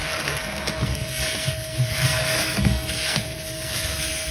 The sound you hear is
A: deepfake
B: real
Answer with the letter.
A